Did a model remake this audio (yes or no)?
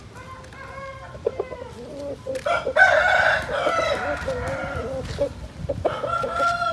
no